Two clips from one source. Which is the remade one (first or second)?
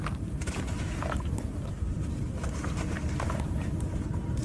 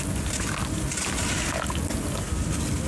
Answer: first